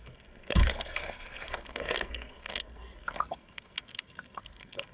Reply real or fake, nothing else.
fake